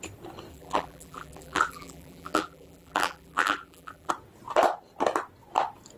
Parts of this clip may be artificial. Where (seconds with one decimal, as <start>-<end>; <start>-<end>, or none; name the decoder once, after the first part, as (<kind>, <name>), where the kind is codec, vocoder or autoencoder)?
0.5-4.1 (vocoder, BigVGAN v2)